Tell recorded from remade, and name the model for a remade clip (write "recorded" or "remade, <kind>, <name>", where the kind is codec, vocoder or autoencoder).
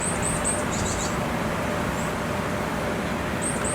recorded